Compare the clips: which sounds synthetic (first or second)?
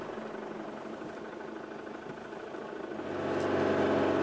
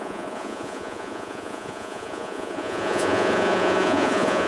second